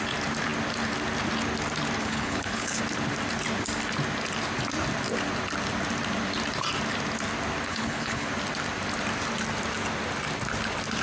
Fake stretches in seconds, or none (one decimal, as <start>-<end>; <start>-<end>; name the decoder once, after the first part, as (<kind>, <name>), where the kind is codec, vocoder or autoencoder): 2.0-2.8 (codec, HILCodec); 7.7-8.3